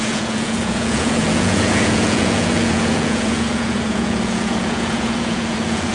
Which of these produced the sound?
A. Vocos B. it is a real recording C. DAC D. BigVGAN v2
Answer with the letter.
A